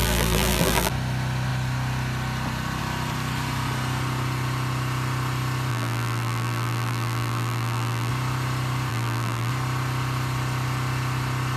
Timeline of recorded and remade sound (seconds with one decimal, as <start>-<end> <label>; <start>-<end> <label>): 0.0-0.9 remade; 0.9-5.7 recorded; 5.7-8.1 remade; 8.1-8.9 recorded; 8.9-9.5 remade; 9.5-11.6 recorded

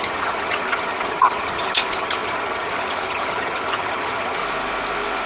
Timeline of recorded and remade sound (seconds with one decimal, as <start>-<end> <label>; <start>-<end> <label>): 0.0-4.4 remade; 4.4-5.3 recorded

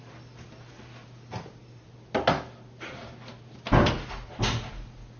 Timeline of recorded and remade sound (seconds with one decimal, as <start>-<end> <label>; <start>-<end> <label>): 0.0-5.2 recorded

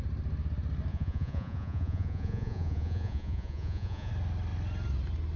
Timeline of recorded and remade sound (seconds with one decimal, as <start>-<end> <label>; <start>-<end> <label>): 0.0-0.9 recorded; 0.9-4.1 remade; 4.1-5.4 recorded